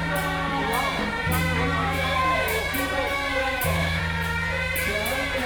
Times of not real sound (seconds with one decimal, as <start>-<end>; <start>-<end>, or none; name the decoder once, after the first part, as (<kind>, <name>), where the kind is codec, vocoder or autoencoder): 1.8-2.6 (autoencoder, DAC-VAE); 3.4-4.0